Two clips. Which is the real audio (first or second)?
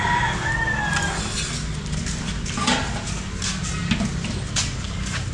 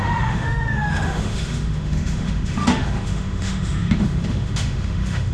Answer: first